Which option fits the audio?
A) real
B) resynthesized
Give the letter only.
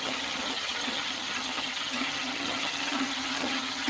B